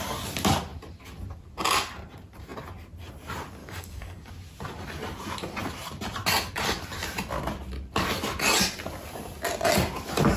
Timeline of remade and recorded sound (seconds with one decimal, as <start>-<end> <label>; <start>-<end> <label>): 0.0-3.6 recorded; 3.6-4.3 remade; 4.3-10.4 recorded